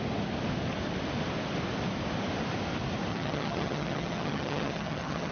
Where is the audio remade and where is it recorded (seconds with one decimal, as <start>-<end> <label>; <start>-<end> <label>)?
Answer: 0.0-3.1 recorded; 3.1-5.3 remade